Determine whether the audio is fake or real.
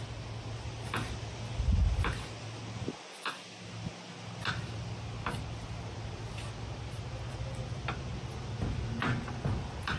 real